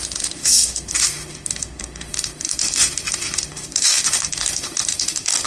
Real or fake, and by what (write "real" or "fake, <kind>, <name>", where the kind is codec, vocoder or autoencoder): fake, autoencoder, DAC-VAE